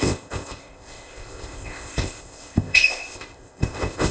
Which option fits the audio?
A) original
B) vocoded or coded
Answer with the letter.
B